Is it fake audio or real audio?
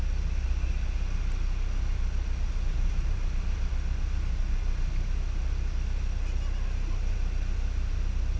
real